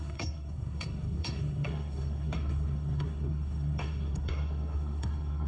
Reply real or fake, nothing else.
fake